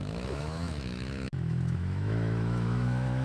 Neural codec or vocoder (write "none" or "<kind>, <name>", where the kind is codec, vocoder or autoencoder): autoencoder, DAC-VAE